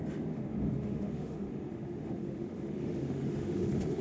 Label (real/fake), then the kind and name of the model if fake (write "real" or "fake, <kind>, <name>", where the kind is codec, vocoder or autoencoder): fake, autoencoder, DAC-VAE